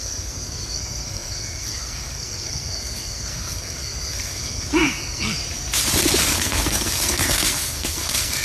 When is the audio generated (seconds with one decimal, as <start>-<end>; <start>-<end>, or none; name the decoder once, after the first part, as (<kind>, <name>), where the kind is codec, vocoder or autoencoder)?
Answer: 0.0-5.4 (codec, SNAC); 6.2-8.4